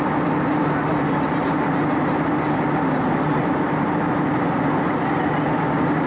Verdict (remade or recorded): recorded